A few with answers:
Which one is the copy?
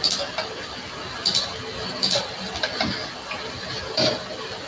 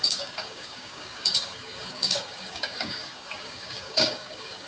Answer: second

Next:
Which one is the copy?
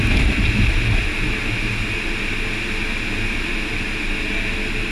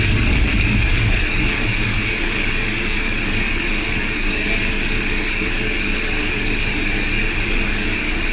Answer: second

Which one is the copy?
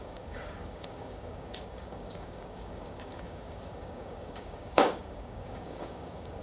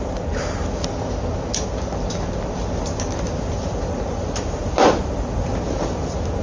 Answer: first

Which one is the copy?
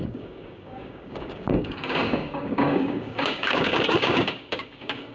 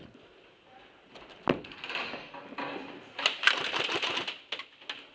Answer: first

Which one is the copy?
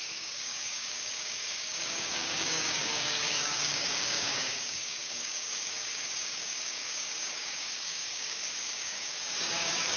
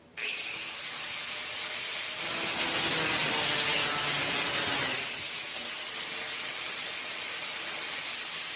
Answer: first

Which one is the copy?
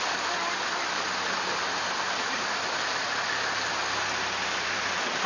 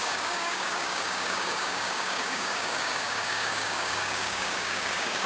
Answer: second